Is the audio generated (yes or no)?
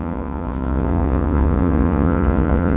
yes